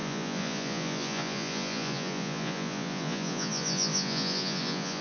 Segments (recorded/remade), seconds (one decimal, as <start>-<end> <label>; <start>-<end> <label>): 0.0-5.0 remade